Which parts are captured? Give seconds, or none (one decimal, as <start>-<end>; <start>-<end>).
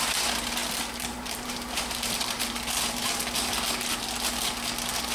0.0-0.6; 3.2-5.1